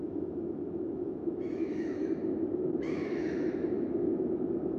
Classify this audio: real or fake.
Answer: fake